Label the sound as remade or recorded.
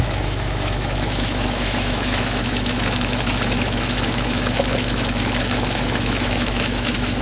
remade